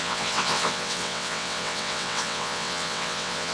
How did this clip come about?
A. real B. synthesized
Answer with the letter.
B